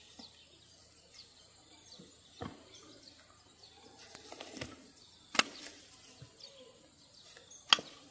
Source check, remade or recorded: recorded